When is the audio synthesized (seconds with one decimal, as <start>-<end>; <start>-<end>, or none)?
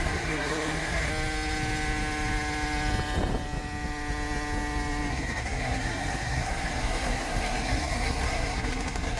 0.0-1.1; 5.1-9.2